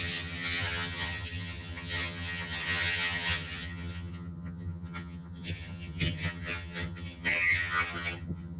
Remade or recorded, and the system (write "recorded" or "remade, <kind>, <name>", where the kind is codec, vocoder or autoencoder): remade, vocoder, HiFi-GAN